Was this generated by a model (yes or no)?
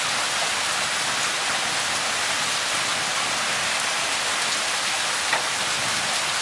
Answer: no